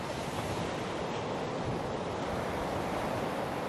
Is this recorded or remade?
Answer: recorded